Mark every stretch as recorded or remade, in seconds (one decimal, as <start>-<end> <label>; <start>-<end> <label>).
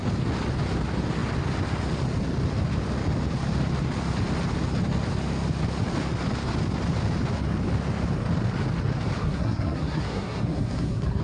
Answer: 0.0-9.2 recorded; 9.2-11.2 remade